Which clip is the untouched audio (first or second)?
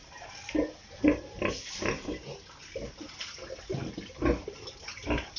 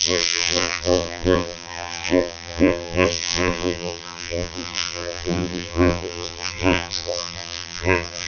first